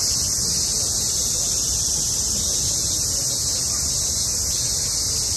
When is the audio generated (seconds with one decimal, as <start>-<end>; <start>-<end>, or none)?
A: none